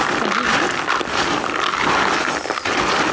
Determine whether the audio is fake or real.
real